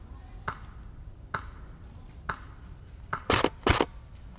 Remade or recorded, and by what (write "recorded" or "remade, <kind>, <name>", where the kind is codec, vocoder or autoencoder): recorded